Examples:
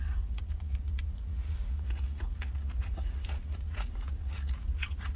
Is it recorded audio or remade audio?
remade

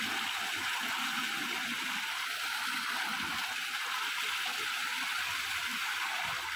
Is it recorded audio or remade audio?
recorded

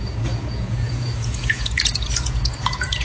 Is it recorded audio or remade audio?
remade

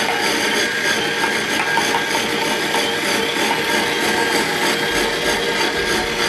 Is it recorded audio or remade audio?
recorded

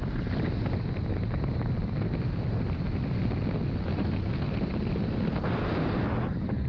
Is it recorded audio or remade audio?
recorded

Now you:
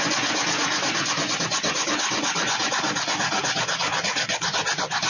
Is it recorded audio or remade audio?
remade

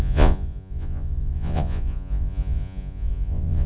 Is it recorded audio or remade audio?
remade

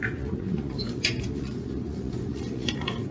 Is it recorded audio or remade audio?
remade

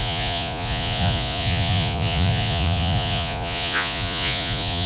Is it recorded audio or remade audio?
remade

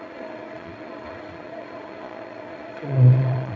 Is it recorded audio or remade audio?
remade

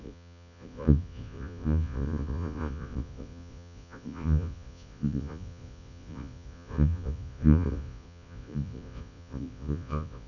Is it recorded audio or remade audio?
remade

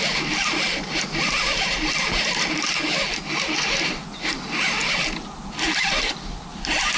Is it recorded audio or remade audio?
recorded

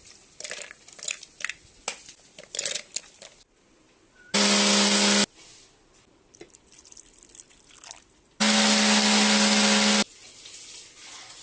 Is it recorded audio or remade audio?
recorded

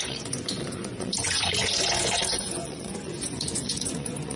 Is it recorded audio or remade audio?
remade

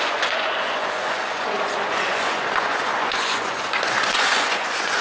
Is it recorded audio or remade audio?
remade